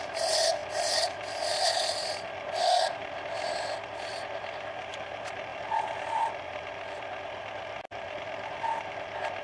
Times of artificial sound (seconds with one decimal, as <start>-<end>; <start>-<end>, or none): none